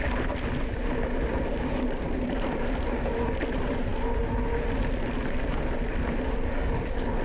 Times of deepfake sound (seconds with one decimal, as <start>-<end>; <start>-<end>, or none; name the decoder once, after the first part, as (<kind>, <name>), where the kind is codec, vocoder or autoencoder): none